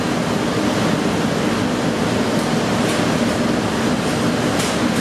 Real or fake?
real